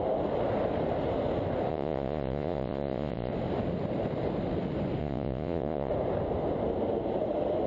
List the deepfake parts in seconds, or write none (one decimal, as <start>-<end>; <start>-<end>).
1.7-3.3; 5.0-5.9